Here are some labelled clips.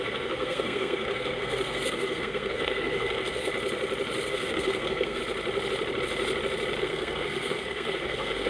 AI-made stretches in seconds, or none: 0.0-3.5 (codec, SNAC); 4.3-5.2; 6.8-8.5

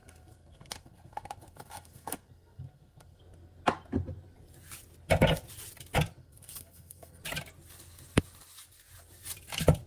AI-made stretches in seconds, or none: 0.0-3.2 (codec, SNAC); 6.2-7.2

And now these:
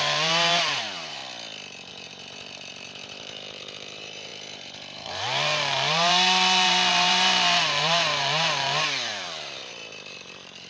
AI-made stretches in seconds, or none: 0.0-1.2 (vocoder, BigVGAN v2); 1.9-10.7

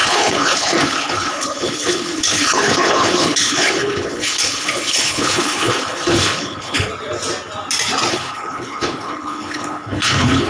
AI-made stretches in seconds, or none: 0.0-6.9 (codec, HILCodec); 8.1-10.5

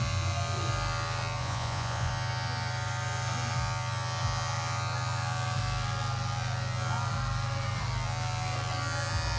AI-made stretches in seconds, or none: 1.4-2.1 (vocoder, Vocos)

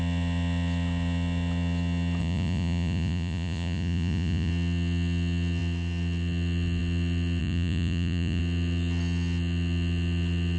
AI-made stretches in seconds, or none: 2.2-4.5 (vocoder, Vocos); 7.4-8.4